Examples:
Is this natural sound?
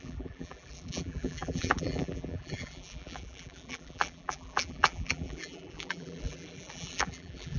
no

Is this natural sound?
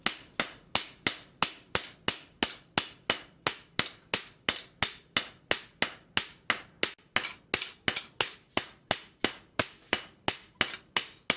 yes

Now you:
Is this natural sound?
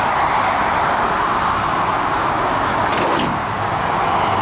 yes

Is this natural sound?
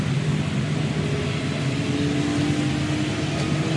yes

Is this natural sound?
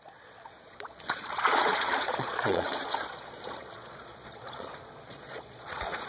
no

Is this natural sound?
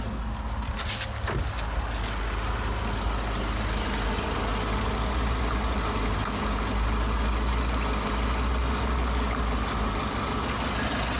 yes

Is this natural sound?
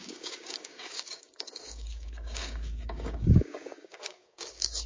no